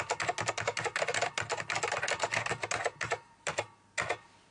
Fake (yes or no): no